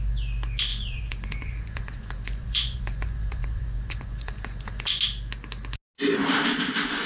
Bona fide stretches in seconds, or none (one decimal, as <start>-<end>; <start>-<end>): 0.0-0.7; 5.0-7.1